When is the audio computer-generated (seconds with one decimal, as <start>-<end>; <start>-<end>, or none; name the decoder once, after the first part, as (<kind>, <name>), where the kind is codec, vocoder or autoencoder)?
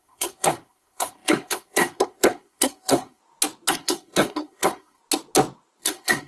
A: 0.0-3.2 (codec, SNAC); 3.7-5.0; 5.8-6.3